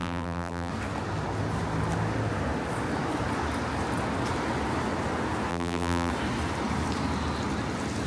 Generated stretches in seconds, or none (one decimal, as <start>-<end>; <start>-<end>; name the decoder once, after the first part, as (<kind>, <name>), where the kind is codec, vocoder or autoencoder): 0.0-0.7 (vocoder, BigVGAN v2); 5.5-6.1